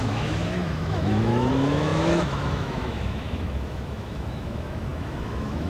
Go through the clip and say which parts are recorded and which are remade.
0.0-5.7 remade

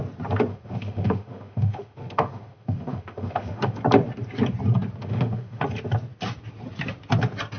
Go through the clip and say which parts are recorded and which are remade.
0.0-0.5 recorded; 0.5-3.8 remade; 3.8-5.0 recorded; 5.0-5.6 remade; 5.6-7.6 recorded

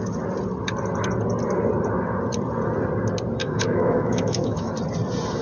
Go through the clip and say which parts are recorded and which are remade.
0.0-3.4 recorded; 3.4-4.7 remade; 4.7-5.4 recorded

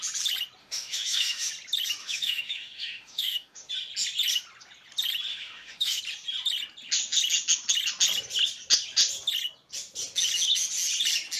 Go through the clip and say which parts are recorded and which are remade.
0.0-0.6 recorded; 0.6-1.5 remade; 1.5-2.0 recorded; 2.0-3.7 remade; 3.7-5.3 recorded; 5.3-6.0 remade; 6.0-11.4 recorded